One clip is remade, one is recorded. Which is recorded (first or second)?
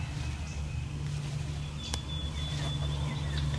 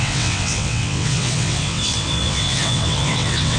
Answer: first